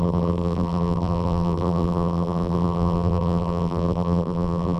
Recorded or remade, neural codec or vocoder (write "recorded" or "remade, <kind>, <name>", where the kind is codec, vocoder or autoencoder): remade, vocoder, BigVGAN v2